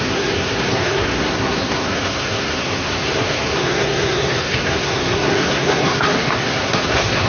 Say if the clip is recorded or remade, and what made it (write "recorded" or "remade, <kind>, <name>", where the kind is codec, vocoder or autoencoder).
remade, codec, SNAC